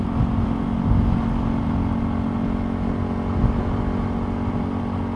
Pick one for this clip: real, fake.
real